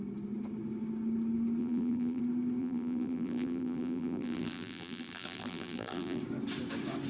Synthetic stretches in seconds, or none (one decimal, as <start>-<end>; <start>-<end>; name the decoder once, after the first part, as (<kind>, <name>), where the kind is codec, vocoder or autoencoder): 1.6-2.2 (vocoder, BigVGAN v2); 2.6-6.2